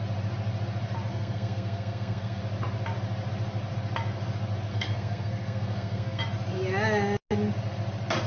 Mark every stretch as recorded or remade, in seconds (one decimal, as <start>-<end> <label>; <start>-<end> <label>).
0.0-1.1 recorded; 1.1-2.4 remade; 2.4-4.7 recorded; 4.7-6.2 remade; 6.2-8.3 recorded